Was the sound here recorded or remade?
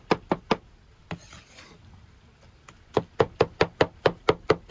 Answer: recorded